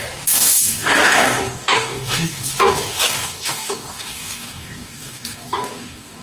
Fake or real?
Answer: fake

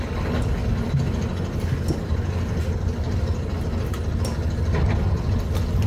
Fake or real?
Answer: real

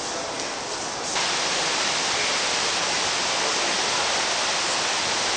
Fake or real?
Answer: real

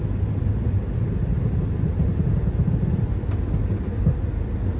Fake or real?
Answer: real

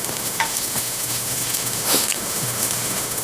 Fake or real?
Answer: fake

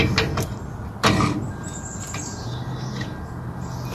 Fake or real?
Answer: real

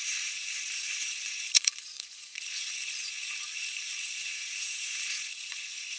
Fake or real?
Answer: fake